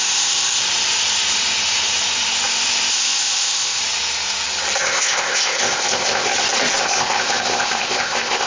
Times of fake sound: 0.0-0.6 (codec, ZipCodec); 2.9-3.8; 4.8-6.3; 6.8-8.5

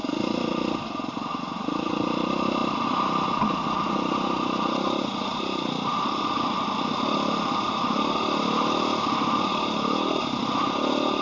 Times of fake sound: none

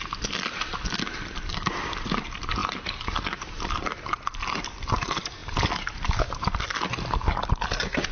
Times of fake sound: none

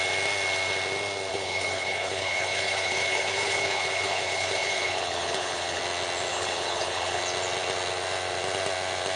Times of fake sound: 1.3-5.8 (codec, HILCodec); 6.3-7.2

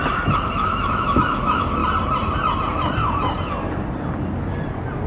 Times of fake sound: 0.0-1.8 (autoencoder, DAC-VAE)

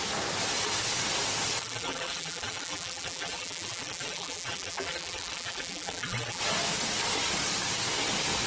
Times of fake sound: 1.6-6.4 (vocoder, BigVGAN v2)

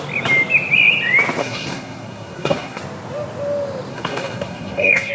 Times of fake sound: 1.4-2.8 (codec, SNAC); 3.9-5.1

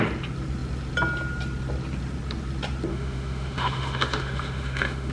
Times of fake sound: 2.9-5.1 (autoencoder, DAC-VAE)